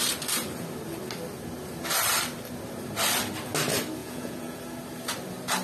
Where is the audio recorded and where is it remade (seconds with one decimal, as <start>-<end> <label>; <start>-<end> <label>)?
0.0-4.0 recorded; 4.0-4.6 remade; 4.6-5.6 recorded